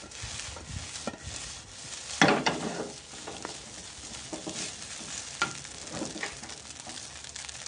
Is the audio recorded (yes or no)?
yes